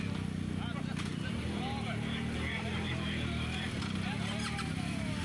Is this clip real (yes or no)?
yes